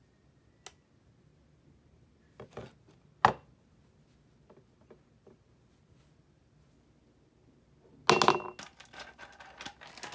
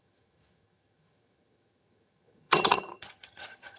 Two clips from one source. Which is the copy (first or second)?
second